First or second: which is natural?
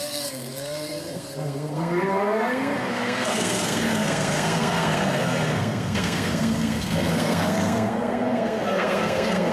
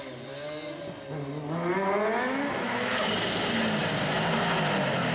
second